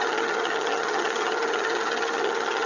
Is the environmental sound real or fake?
fake